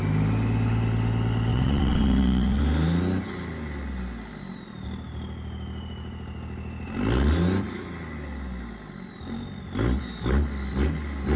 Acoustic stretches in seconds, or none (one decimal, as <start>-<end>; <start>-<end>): 0.0-1.5; 2.6-11.4

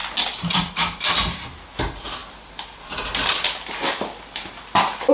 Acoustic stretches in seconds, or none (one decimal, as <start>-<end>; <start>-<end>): 0.0-5.1

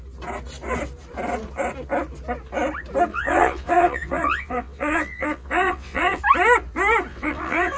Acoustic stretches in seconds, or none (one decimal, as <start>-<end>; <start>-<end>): 0.0-3.1; 6.2-7.1

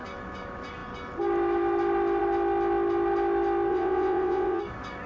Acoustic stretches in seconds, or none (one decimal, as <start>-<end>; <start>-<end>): 0.0-3.7; 4.6-5.1